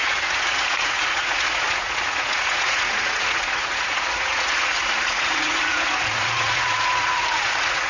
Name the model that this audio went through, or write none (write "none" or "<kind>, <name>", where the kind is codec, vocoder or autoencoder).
vocoder, Vocos